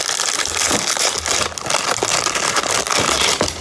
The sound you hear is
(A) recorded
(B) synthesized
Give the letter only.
A